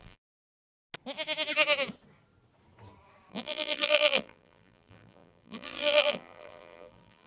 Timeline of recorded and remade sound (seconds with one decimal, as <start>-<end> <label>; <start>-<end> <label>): 0.0-0.5 remade; 0.5-3.3 recorded; 3.3-7.3 remade